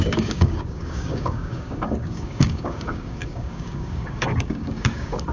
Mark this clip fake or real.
fake